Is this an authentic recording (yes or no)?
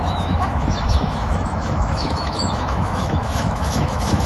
no